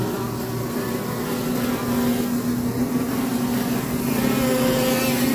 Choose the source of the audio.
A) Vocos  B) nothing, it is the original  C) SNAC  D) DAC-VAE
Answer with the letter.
B